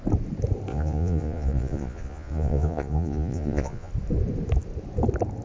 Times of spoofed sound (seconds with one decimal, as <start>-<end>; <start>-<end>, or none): 0.7-3.9